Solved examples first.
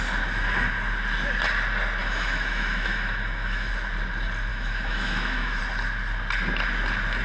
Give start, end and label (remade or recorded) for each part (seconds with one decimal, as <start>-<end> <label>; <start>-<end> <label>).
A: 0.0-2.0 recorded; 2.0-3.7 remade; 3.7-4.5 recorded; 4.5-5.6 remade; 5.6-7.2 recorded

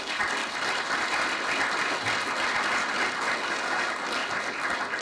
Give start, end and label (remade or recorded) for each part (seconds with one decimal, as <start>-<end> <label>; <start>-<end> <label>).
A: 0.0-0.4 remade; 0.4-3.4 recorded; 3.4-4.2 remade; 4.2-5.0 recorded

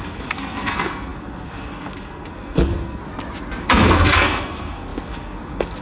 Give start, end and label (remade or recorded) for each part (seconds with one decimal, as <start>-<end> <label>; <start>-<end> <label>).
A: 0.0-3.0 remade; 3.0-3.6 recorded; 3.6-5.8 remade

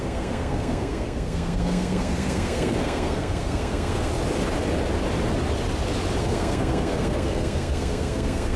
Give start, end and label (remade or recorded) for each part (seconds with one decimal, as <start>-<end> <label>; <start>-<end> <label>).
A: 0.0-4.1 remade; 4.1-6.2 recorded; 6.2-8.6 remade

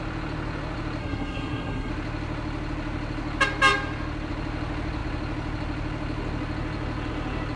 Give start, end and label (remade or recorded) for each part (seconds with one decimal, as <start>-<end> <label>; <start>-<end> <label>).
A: 0.0-1.0 recorded; 1.0-1.9 remade; 1.9-7.6 recorded

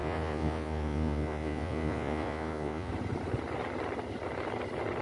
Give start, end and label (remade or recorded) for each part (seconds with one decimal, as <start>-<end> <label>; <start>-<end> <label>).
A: 0.0-2.9 remade; 2.9-5.0 recorded

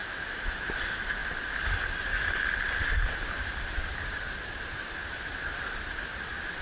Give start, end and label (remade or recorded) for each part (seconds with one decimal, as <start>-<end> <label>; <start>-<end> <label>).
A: 0.0-0.6 remade; 0.6-6.6 recorded